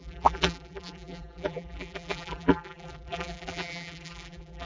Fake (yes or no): yes